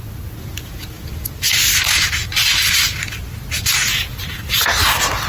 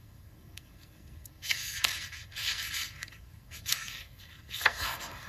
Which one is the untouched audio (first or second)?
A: first